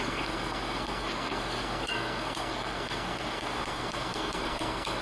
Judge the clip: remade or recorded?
remade